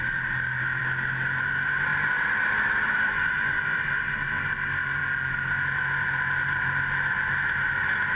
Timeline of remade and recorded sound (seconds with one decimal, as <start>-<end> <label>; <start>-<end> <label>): 0.0-8.1 recorded